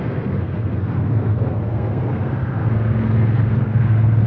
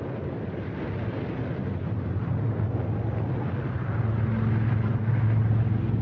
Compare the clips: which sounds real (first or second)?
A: second